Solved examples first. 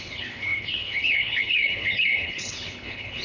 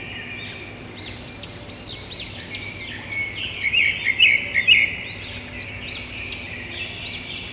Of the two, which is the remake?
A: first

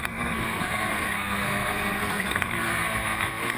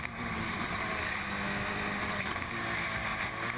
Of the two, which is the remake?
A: first